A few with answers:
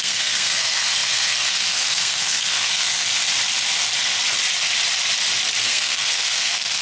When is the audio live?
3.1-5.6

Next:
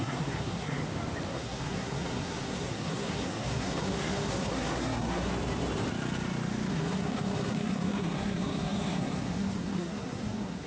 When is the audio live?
0.8-1.3; 5.3-6.7

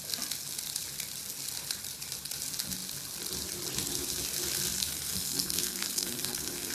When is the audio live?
0.0-4.8

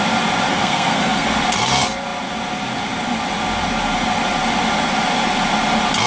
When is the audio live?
0.0-0.5; 1.4-6.1

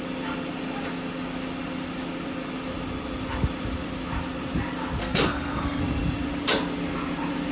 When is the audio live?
0.0-5.0; 5.8-7.5

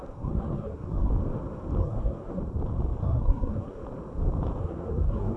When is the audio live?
1.1-1.8; 2.4-3.0; 3.8-4.6